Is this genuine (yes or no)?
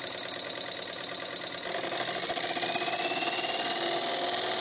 yes